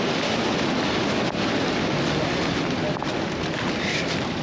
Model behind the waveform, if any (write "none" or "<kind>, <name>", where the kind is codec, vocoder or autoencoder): none